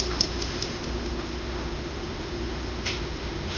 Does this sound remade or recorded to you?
remade